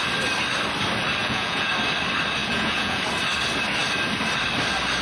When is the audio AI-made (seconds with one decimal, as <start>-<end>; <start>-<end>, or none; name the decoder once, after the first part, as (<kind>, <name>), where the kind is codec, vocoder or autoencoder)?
1.2-1.7 (vocoder, Vocos); 2.4-3.0